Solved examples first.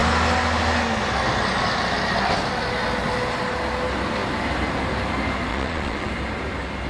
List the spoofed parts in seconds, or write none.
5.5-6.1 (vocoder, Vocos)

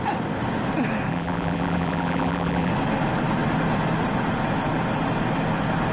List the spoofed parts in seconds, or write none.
1.1-2.7 (vocoder, BigVGAN v2)

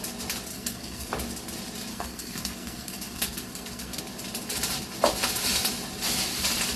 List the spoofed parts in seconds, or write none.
0.5-1.1 (codec, SNAC); 1.9-4.0

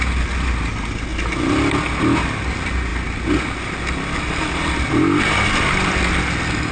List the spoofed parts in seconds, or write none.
none

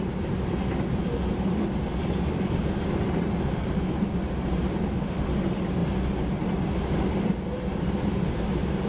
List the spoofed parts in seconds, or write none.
none